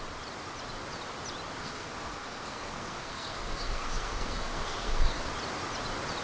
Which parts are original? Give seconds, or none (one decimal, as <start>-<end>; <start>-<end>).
0.0-1.6; 5.3-6.2